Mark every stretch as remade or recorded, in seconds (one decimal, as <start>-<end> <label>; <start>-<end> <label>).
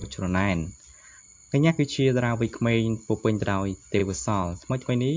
0.0-5.2 recorded